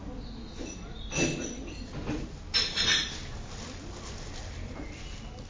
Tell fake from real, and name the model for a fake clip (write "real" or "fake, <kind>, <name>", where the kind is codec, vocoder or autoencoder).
real